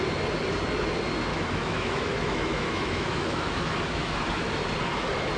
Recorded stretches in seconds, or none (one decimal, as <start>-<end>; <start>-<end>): 0.0-1.3; 4.5-5.4